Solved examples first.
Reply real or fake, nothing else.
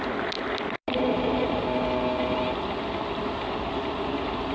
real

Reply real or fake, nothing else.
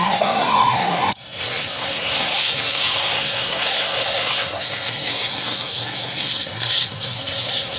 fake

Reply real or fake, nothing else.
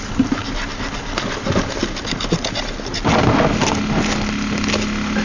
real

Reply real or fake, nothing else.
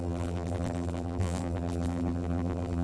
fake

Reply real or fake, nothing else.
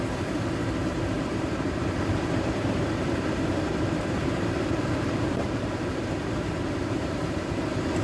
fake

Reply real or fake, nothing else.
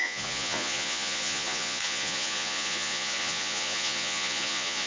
fake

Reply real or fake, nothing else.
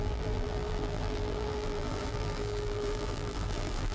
fake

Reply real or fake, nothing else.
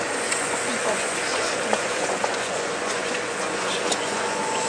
fake